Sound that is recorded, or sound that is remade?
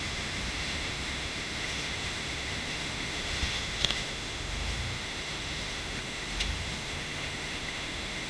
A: remade